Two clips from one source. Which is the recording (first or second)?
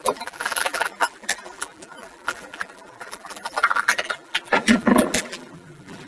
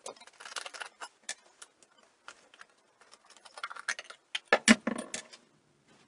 second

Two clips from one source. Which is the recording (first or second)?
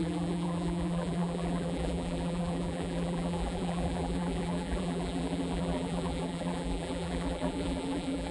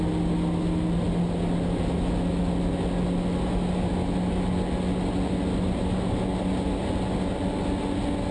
second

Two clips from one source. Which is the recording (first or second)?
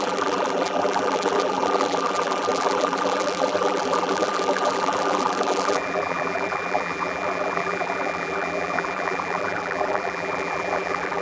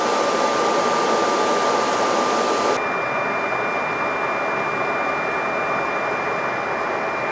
second